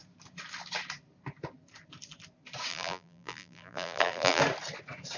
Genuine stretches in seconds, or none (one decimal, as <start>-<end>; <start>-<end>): 0.0-2.7; 4.4-5.2